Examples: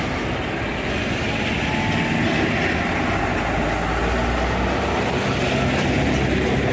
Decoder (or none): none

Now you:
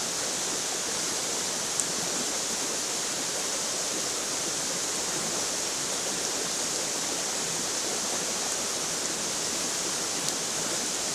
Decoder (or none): none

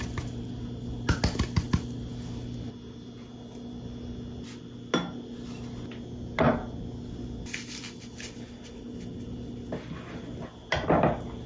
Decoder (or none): none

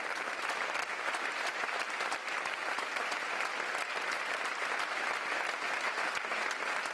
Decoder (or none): none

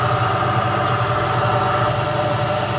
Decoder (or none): none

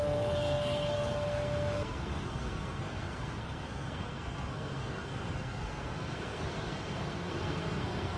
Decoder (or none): codec, SNAC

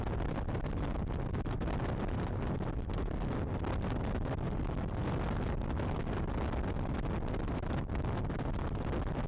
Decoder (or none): none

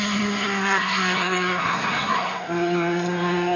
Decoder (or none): codec, SNAC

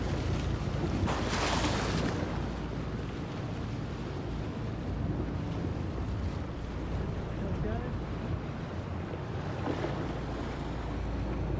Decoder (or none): none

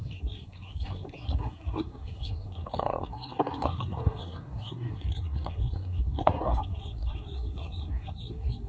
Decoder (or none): codec, SNAC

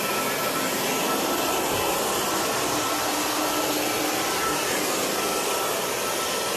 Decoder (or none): none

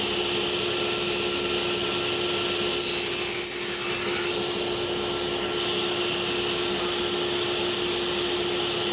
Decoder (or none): none